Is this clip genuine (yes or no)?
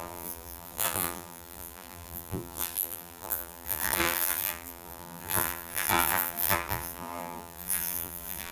no